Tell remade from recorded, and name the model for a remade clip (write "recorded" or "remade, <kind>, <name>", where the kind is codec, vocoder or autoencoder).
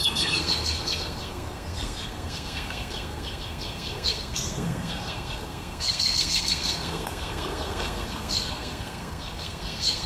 remade, codec, SNAC